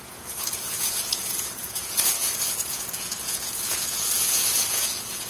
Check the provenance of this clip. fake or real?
fake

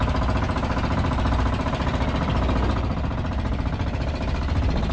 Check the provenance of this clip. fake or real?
real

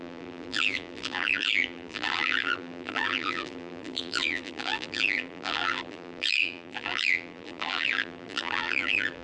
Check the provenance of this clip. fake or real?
fake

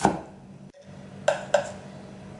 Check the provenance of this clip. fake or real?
real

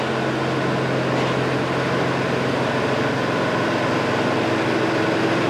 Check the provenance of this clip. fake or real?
real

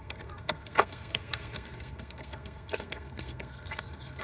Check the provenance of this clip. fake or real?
fake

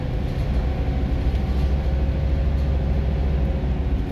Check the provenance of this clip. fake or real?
real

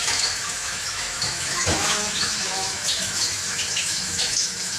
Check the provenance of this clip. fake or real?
fake